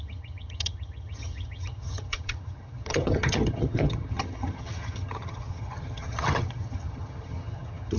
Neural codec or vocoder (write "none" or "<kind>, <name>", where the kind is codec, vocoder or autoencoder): vocoder, HiFi-GAN